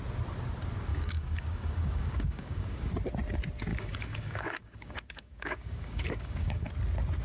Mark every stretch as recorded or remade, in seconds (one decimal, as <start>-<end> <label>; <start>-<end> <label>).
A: 0.0-0.9 recorded; 0.9-2.9 remade; 2.9-3.7 recorded; 3.7-6.7 remade; 6.7-7.2 recorded